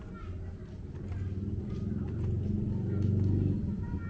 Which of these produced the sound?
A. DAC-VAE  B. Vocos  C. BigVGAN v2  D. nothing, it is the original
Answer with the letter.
D